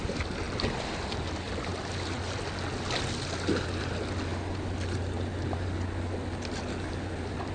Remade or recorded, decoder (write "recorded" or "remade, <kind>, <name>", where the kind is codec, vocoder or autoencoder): recorded